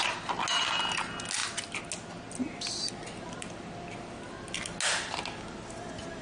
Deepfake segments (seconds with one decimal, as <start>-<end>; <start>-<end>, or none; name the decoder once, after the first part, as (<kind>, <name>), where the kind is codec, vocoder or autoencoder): none

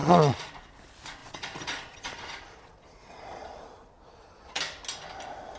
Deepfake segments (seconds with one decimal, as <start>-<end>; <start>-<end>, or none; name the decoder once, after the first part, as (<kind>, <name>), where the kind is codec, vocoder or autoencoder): 0.0-0.5 (vocoder, Vocos); 1.2-4.6

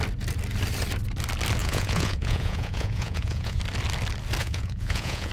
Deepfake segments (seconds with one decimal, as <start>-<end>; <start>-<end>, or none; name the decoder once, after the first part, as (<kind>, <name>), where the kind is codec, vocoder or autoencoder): 1.6-3.6 (vocoder, Vocos); 4.4-5.3

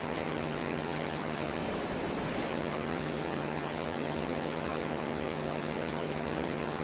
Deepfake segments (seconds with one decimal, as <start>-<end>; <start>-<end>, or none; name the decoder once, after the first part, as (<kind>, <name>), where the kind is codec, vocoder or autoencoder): 0.0-1.6 (vocoder, HiFi-GAN); 2.5-6.8